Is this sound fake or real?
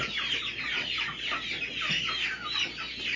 real